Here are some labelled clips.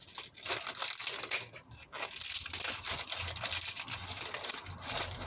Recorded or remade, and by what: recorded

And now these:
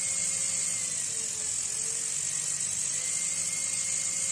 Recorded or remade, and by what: recorded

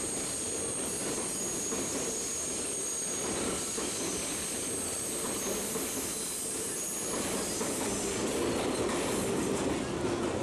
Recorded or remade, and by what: recorded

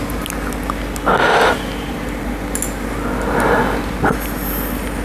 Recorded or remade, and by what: recorded